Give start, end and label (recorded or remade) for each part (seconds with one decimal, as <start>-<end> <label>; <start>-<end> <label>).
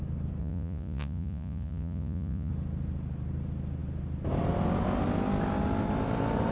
0.0-0.4 recorded; 0.4-2.5 remade; 2.5-6.5 recorded